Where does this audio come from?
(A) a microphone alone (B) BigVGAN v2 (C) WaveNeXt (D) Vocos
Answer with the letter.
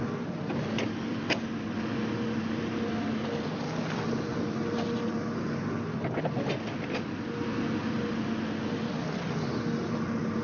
A